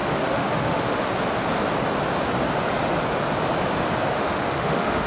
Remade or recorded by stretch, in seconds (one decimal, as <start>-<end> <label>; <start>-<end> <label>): 0.0-1.1 remade; 1.1-4.2 recorded; 4.2-5.1 remade